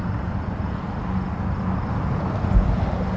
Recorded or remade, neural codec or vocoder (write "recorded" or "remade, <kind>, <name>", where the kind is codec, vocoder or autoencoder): recorded